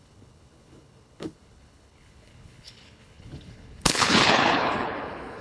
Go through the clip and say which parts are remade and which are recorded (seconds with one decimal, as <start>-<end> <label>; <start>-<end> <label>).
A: 0.0-5.4 remade